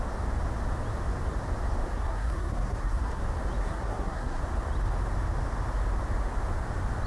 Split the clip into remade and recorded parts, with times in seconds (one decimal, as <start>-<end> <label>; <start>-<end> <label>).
0.0-1.9 recorded; 1.9-3.2 remade; 3.2-3.6 recorded; 3.6-4.4 remade; 4.4-7.1 recorded